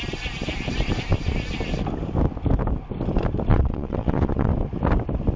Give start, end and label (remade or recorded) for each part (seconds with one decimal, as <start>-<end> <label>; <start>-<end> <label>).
0.0-3.5 recorded; 3.5-4.5 remade; 4.5-5.4 recorded